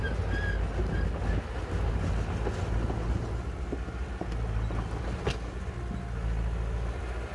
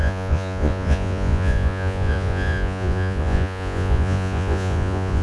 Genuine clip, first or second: first